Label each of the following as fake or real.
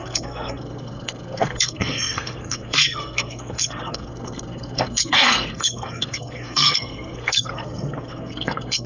fake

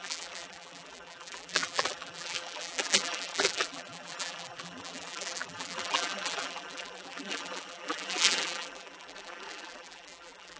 fake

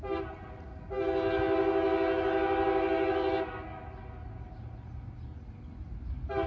real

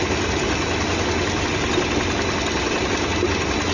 real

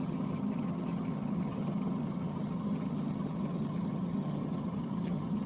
fake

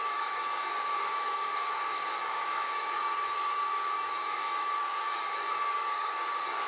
fake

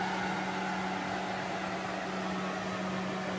real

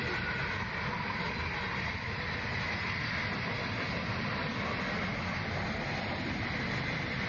real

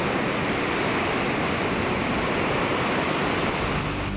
real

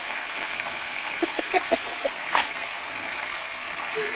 fake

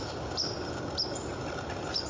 fake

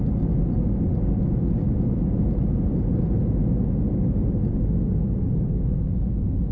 real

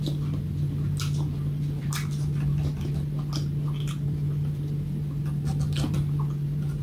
real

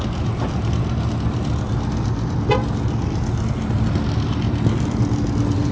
real